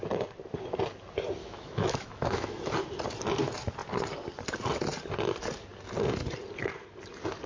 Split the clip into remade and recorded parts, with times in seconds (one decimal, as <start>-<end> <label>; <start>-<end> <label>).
0.0-1.4 recorded; 1.4-2.7 remade; 2.7-7.5 recorded